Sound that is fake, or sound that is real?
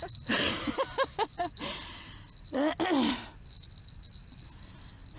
real